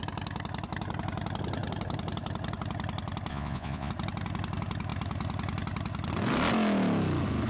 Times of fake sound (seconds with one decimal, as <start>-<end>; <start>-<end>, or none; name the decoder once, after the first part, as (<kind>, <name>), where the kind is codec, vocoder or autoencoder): 3.3-3.9 (vocoder, Vocos)